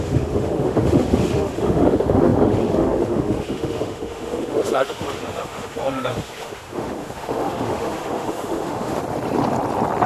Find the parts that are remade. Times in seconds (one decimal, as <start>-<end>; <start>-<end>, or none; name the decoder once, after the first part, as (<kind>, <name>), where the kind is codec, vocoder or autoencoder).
0.0-9.0 (autoencoder, DAC-VAE)